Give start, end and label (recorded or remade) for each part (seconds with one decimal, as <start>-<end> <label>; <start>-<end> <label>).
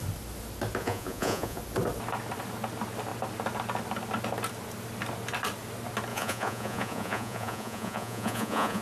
0.0-0.8 recorded; 0.8-1.6 remade; 1.6-6.1 recorded; 6.1-8.8 remade